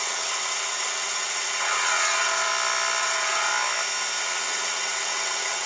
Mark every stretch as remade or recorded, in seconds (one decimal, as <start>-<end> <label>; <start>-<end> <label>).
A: 0.0-2.5 remade; 2.5-3.0 recorded; 3.0-3.5 remade; 3.5-4.2 recorded; 4.2-5.7 remade